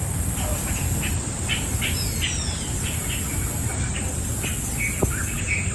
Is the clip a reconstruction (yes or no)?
no